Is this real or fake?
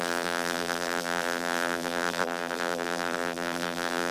fake